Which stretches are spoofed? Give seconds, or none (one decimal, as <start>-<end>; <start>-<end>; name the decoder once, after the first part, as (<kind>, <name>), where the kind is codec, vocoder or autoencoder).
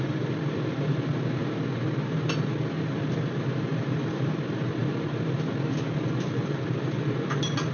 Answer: 0.0-1.4 (vocoder, BigVGAN v2); 3.9-4.8; 5.7-7.7